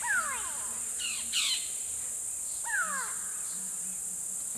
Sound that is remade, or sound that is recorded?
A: recorded